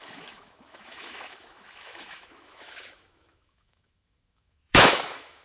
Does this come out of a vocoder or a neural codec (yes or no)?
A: yes